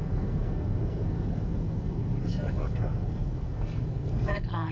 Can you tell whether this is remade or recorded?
remade